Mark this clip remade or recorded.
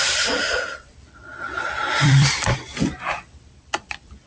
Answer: remade